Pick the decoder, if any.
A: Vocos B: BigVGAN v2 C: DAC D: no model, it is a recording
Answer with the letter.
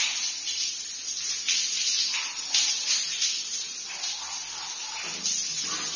D